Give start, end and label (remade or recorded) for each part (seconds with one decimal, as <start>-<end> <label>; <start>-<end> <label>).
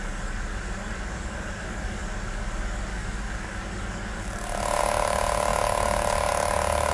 0.0-6.9 remade